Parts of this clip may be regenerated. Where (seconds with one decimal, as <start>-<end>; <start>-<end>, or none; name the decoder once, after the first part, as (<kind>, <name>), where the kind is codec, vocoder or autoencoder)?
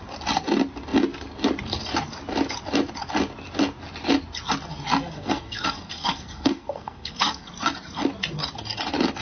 4.9-7.5 (codec, SNAC)